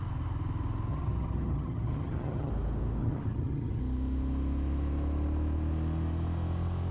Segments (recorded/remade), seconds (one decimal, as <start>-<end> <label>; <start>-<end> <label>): 0.0-0.9 recorded; 0.9-2.5 remade; 2.5-3.0 recorded; 3.0-3.8 remade; 3.8-6.9 recorded